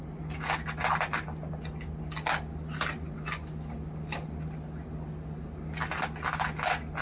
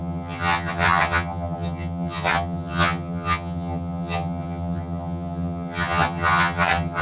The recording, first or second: first